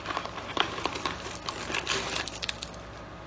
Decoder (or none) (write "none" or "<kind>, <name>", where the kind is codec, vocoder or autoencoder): none